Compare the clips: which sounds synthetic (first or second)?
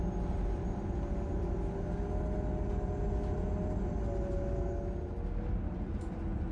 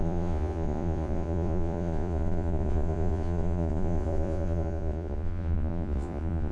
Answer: second